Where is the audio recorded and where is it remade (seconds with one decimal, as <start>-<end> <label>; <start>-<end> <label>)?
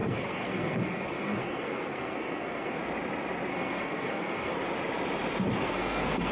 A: 0.0-2.8 remade; 2.8-3.5 recorded; 3.5-4.5 remade; 4.5-5.6 recorded; 5.6-6.3 remade